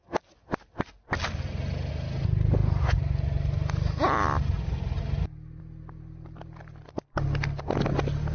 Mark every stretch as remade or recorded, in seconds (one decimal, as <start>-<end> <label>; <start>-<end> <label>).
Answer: 0.0-8.3 recorded